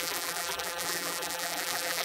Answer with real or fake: fake